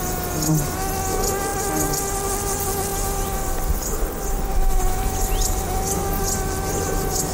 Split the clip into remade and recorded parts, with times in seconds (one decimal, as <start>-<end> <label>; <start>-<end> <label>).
0.0-1.5 recorded; 1.5-2.2 remade; 2.2-7.3 recorded